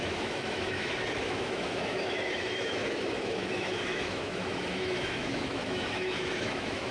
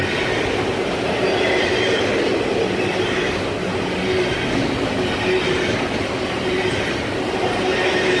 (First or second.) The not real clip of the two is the first